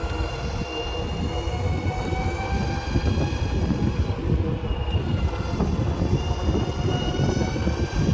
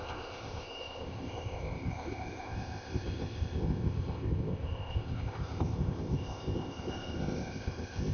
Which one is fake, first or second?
second